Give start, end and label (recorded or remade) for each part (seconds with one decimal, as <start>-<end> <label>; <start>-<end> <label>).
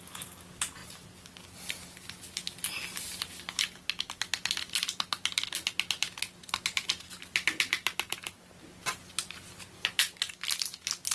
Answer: 0.0-11.1 recorded